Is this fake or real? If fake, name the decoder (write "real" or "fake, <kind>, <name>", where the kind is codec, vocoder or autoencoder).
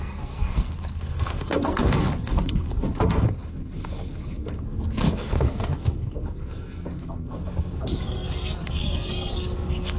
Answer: fake, codec, SNAC